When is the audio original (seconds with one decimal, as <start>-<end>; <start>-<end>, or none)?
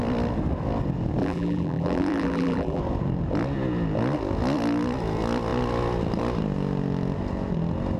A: 0.0-1.2; 2.8-8.0